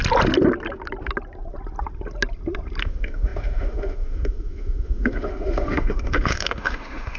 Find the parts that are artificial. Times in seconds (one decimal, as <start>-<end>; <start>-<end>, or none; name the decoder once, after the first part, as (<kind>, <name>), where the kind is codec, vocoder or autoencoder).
2.8-7.2 (autoencoder, DAC-VAE)